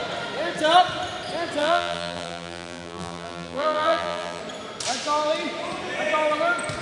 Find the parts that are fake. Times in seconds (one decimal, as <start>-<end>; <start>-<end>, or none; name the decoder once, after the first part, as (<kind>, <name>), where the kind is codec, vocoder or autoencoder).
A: 1.6-4.4 (vocoder, BigVGAN v2)